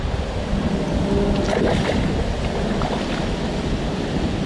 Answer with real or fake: real